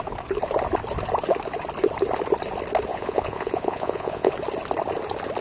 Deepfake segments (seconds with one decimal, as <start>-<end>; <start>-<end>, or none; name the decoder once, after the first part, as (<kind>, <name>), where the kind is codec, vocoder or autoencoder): 2.9-4.3 (vocoder, Vocos)